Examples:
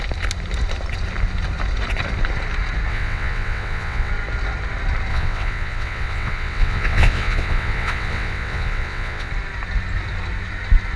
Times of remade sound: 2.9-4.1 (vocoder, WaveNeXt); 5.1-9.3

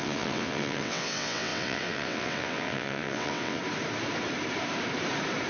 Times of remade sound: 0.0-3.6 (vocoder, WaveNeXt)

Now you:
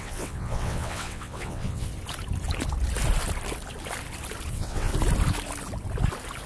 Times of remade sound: 0.0-1.9 (vocoder, WaveNeXt); 4.5-4.9

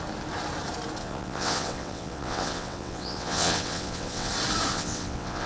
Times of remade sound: 1.0-4.3 (vocoder, WaveNeXt); 4.7-5.5